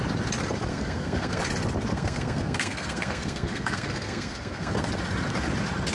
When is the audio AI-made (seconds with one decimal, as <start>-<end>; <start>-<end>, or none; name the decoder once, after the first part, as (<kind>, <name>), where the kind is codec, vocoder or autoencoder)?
0.7-1.4 (codec, SNAC); 1.9-4.9